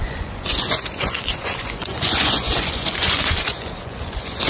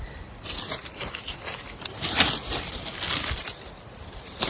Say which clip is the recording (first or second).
second